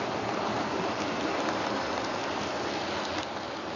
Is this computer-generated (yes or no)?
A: no